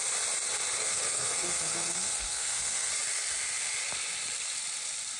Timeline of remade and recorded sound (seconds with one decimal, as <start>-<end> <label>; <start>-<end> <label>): 0.0-0.8 recorded; 0.8-2.9 remade; 2.9-5.2 recorded